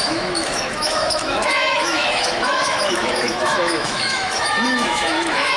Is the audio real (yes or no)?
no